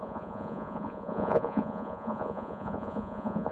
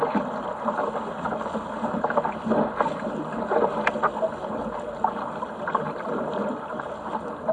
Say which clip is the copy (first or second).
first